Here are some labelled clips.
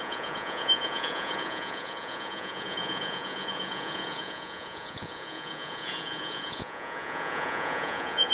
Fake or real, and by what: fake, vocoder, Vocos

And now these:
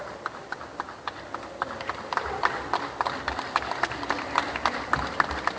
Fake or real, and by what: real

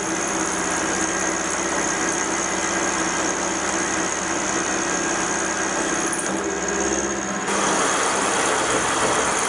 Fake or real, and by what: real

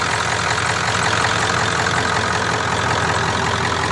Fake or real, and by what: real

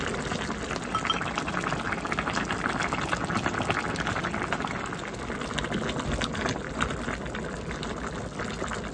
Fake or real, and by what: real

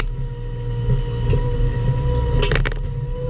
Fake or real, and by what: real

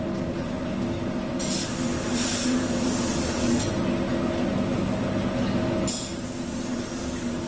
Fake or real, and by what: real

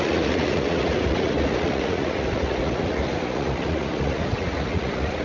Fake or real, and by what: fake, vocoder, Vocos